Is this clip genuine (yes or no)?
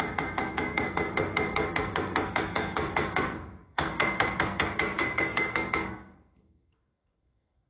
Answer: no